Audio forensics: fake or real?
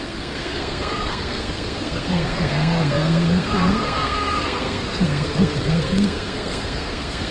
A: fake